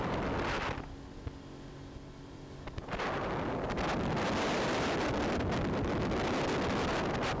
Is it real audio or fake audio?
real